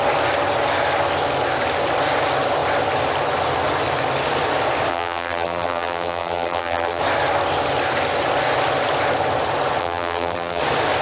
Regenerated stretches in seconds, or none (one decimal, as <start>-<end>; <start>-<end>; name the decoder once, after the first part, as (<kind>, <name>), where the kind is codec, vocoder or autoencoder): 4.9-7.0 (vocoder, BigVGAN v2); 9.8-10.6